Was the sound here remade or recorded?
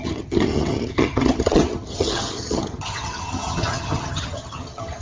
remade